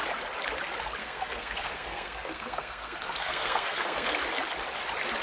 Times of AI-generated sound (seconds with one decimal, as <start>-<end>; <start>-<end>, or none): 1.0-4.1